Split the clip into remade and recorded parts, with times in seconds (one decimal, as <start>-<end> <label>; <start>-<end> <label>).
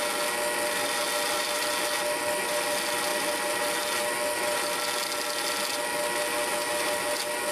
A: 0.0-7.5 recorded